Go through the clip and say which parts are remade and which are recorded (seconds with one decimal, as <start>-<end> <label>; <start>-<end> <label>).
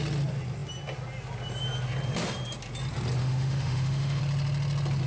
0.0-3.2 recorded; 3.2-4.2 remade; 4.2-5.1 recorded